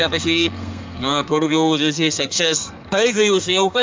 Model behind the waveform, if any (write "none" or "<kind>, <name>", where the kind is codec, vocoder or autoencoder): codec, SNAC